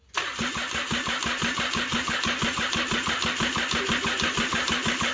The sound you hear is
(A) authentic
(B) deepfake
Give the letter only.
A